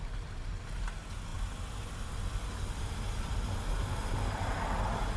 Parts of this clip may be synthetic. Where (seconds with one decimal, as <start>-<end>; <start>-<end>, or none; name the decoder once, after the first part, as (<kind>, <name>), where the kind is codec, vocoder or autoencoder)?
none